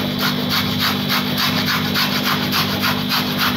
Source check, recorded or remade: recorded